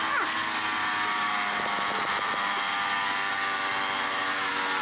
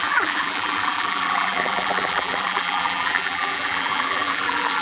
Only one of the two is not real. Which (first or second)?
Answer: second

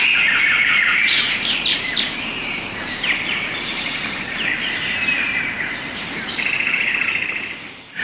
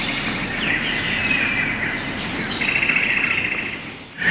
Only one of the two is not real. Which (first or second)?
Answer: first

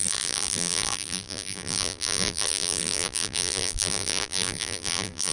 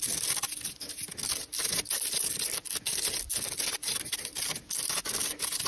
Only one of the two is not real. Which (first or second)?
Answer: first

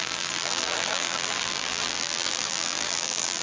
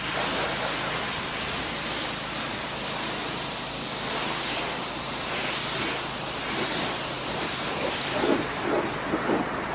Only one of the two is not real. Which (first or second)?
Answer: first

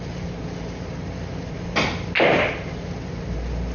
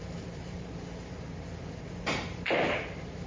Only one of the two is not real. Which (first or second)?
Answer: second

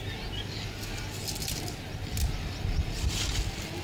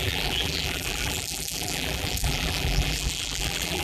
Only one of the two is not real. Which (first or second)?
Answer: second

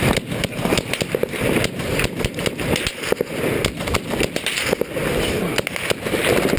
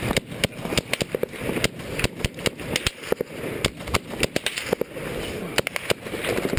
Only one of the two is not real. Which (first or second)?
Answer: first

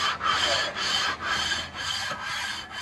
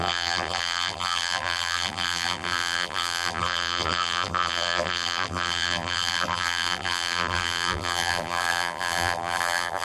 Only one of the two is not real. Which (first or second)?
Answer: second